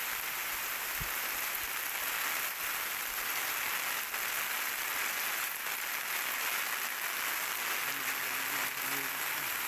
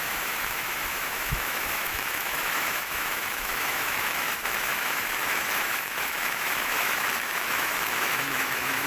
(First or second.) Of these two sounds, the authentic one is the first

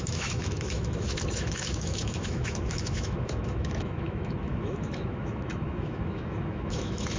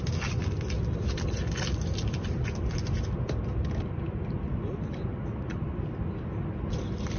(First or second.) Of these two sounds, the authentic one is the second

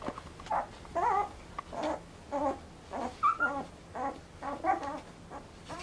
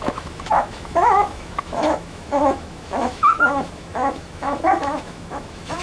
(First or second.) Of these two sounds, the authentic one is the first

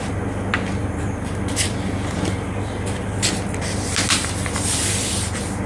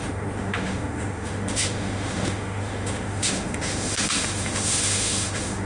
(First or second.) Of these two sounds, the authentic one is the first